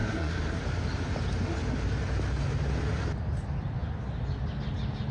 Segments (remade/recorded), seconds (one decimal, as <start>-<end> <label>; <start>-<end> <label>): 0.0-0.6 remade; 0.6-5.1 recorded